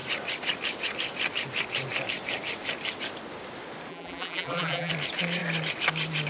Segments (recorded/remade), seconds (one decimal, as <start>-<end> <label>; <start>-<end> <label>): 0.0-3.9 recorded; 3.9-4.9 remade; 4.9-6.3 recorded